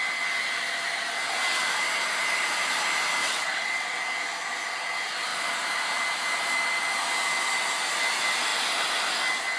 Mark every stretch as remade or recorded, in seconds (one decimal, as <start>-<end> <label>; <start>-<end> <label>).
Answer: 0.0-3.2 recorded; 3.2-4.0 remade; 4.0-9.6 recorded